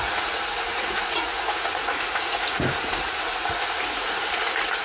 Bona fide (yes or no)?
no